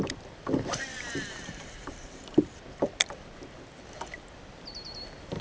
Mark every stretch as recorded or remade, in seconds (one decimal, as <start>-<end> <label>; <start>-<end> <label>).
0.0-0.9 recorded; 0.9-2.4 remade; 2.4-5.4 recorded